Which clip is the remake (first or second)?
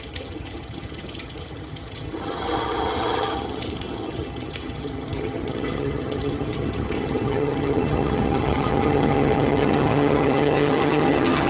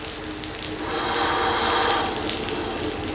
first